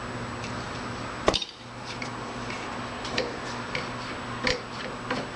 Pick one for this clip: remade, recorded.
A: recorded